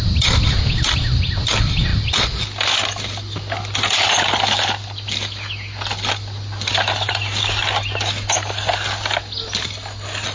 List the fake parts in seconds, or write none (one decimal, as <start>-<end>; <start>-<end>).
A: none